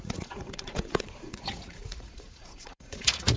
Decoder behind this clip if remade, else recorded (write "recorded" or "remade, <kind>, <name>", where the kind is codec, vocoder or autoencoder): remade, vocoder, Vocos